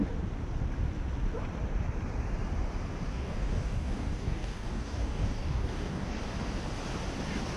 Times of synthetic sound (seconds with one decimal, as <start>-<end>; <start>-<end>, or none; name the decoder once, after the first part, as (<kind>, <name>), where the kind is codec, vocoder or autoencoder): 3.1-6.2 (codec, DAC)